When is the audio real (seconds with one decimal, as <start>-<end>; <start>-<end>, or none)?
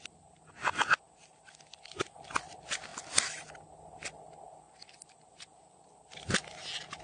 0.0-7.0